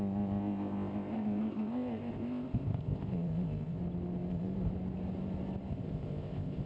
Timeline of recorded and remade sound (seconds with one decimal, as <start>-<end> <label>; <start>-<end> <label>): 0.0-3.8 remade; 3.8-4.3 recorded; 4.3-4.7 remade; 4.7-5.7 recorded; 5.7-6.7 remade